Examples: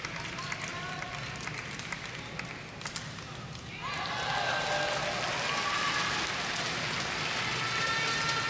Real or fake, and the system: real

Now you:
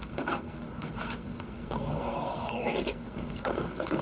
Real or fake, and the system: fake, codec, SNAC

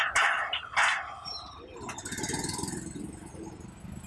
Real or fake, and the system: real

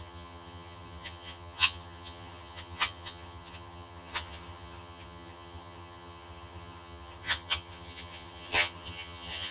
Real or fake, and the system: fake, vocoder, HiFi-GAN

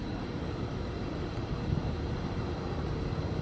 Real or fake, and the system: fake, vocoder, BigVGAN v2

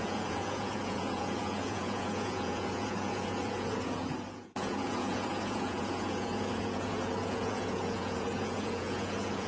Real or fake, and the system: fake, vocoder, Vocos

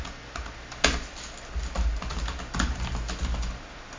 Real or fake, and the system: real